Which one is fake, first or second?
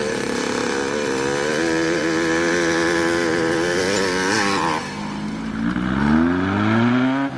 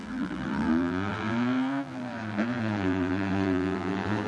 second